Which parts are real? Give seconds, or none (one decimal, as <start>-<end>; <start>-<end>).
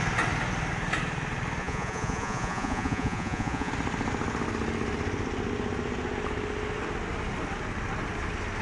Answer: 0.0-1.6; 3.7-8.6